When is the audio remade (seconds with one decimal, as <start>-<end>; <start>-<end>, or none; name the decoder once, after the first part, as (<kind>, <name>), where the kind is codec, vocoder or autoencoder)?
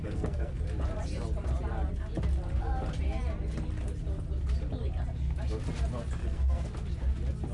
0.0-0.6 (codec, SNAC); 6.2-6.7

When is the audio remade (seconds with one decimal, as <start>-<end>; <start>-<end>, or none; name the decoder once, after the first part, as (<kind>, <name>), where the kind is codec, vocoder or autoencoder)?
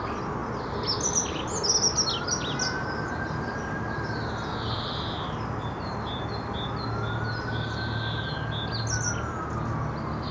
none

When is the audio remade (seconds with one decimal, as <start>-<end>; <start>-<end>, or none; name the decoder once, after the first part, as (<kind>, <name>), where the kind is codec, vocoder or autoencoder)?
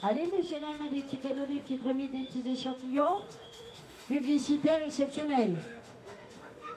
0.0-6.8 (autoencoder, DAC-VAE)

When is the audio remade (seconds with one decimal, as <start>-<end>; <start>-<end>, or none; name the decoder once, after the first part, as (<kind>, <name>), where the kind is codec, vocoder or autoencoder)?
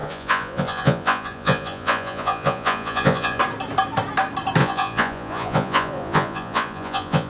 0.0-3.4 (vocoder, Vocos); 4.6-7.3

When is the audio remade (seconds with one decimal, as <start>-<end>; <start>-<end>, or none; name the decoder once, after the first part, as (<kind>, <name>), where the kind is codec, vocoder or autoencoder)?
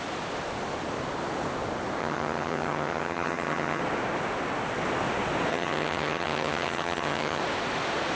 2.0-3.8 (vocoder, HiFi-GAN); 5.5-7.4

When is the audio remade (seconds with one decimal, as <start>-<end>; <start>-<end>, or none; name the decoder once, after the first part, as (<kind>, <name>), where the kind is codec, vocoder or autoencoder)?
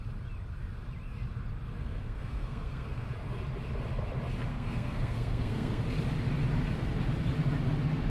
1.8-3.1 (codec, SNAC); 4.5-5.8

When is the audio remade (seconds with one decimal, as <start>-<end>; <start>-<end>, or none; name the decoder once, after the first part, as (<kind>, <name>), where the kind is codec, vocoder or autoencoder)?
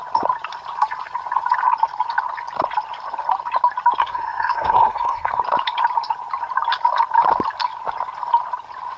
4.0-5.4 (codec, SNAC)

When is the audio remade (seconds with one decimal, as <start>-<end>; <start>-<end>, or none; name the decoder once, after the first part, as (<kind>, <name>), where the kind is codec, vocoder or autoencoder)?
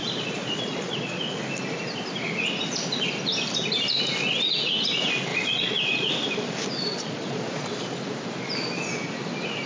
0.0-1.4 (vocoder, Vocos); 5.3-6.1; 6.9-7.7